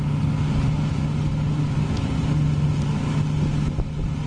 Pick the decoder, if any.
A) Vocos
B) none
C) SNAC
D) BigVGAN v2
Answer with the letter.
B